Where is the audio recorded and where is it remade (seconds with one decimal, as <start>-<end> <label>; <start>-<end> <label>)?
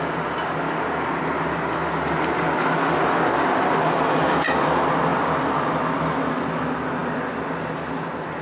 0.0-8.4 recorded